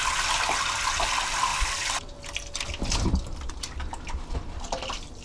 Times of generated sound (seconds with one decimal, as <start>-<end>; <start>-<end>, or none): none